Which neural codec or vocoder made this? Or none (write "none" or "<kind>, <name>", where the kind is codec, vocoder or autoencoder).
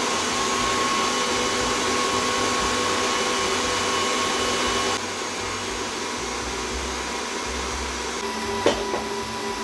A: none